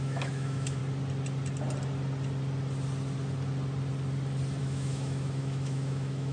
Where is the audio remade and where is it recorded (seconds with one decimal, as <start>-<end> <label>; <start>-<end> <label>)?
0.0-0.8 remade; 0.8-4.6 recorded; 4.6-6.3 remade